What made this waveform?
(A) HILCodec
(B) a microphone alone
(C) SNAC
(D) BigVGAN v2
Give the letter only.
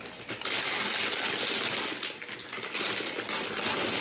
B